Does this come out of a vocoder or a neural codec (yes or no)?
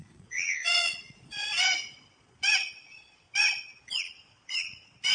yes